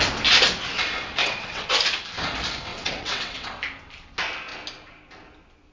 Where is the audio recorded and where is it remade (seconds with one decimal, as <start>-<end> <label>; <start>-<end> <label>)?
0.0-1.2 recorded; 1.2-1.7 remade; 1.7-2.7 recorded; 2.7-3.5 remade; 3.5-5.7 recorded